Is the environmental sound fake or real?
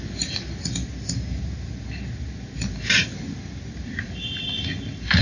real